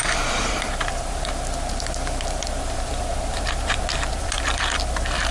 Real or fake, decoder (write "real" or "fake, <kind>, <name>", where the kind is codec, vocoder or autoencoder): fake, vocoder, BigVGAN v2